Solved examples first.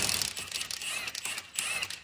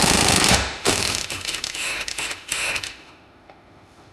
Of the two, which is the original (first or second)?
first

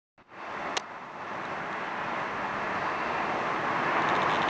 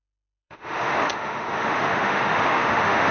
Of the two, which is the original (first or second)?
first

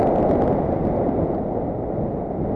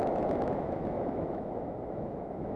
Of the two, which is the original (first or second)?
first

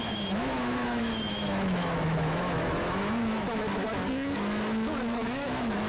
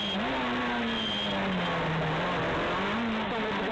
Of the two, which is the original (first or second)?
second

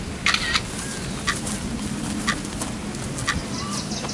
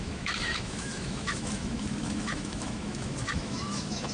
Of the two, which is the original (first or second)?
first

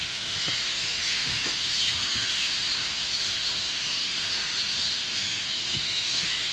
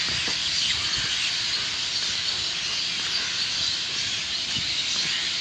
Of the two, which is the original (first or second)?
second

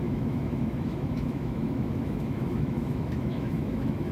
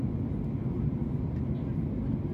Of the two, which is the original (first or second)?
second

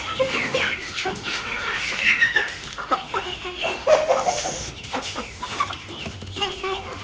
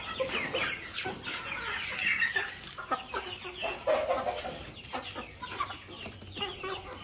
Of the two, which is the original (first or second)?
second